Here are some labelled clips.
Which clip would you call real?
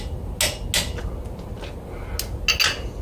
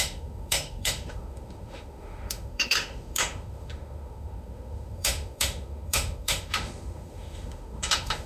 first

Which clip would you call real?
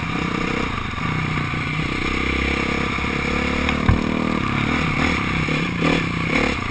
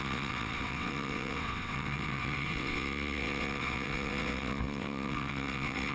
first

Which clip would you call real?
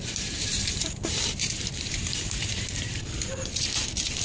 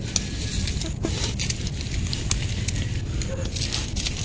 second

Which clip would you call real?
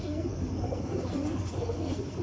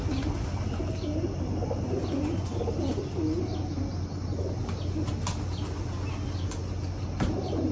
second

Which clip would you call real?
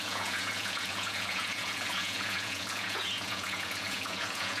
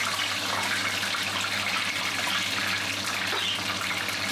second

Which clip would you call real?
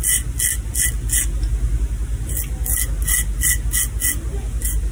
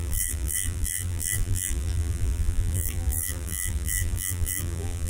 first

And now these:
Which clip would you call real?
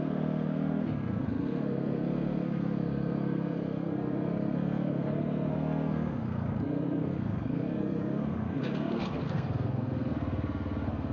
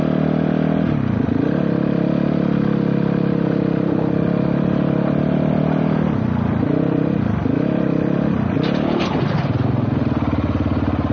second